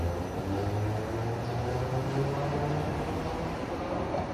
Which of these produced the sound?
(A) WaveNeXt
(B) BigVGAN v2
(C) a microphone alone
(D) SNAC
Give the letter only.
C